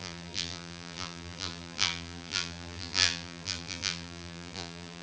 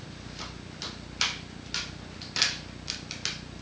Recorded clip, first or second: second